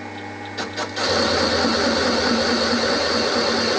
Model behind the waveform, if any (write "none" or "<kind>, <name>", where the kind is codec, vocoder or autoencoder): none